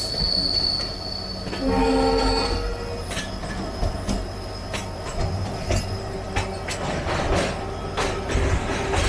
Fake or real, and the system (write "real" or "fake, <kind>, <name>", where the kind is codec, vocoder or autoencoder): real